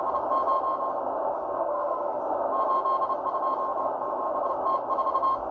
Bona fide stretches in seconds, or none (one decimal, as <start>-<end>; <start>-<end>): 0.0-1.6; 2.2-5.5